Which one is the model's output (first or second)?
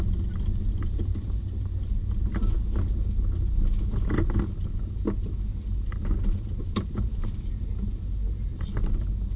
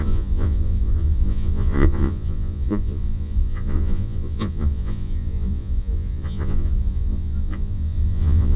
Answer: second